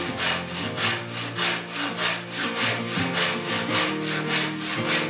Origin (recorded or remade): recorded